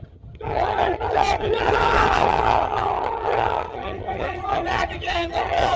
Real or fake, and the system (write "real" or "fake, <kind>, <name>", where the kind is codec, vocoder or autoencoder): fake, vocoder, HiFi-GAN